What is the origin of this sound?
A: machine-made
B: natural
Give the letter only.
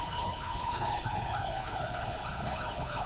A